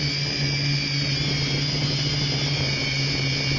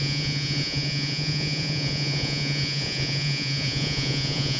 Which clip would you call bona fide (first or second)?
first